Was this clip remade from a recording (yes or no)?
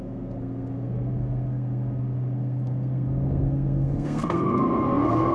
yes